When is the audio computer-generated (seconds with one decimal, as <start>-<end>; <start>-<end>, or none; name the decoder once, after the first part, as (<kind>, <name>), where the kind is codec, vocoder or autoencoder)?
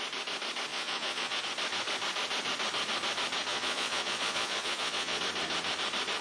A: 0.7-1.4 (vocoder, Vocos); 3.5-5.2